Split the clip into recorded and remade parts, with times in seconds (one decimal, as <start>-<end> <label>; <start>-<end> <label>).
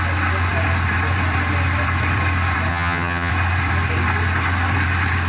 0.0-2.7 recorded; 2.7-3.3 remade; 3.3-5.3 recorded